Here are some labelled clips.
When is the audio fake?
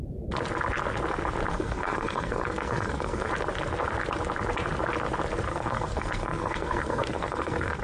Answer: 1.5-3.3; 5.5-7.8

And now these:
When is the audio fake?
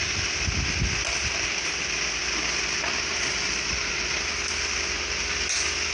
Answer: none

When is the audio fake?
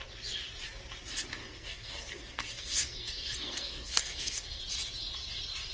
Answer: 1.4-4.6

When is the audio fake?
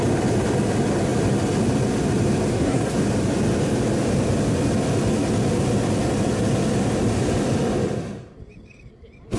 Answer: 2.5-3.0